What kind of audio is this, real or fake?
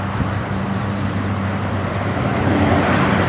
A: fake